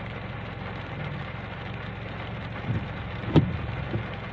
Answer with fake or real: real